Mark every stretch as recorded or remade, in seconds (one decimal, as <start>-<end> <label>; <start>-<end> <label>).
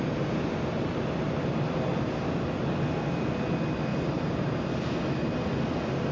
0.0-3.9 recorded; 3.9-4.4 remade; 4.4-6.1 recorded